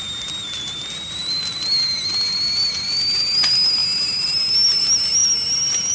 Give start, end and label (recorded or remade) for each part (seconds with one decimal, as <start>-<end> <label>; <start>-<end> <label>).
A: 0.0-5.9 recorded